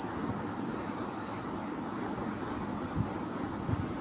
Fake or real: real